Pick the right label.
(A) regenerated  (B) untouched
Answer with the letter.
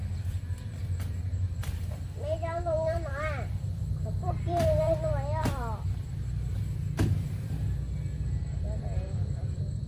A